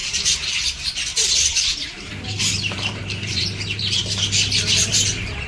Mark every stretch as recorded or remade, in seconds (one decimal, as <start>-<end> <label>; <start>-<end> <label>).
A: 0.0-4.0 remade; 4.0-4.9 recorded; 4.9-5.5 remade